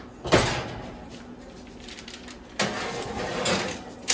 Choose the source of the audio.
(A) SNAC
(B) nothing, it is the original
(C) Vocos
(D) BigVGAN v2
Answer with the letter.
B